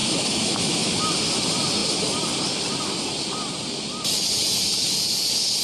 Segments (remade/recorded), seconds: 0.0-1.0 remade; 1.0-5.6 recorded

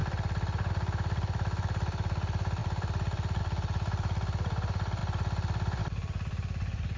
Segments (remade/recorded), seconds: 0.0-7.0 remade